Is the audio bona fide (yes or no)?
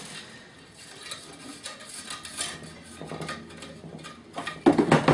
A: yes